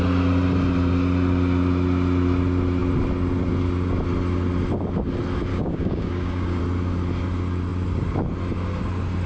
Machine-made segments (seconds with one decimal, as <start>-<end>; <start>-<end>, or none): 5.5-6.6